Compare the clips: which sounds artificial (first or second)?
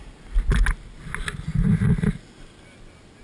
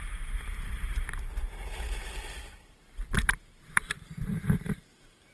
second